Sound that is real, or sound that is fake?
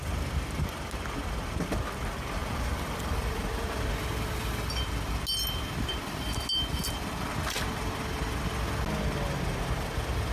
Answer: real